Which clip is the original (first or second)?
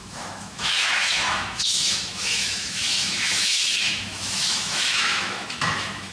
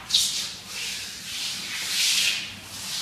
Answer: second